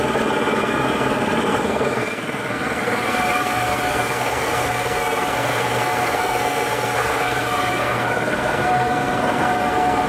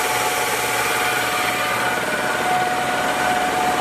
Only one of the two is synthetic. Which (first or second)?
first